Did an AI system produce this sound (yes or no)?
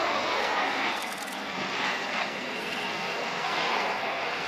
yes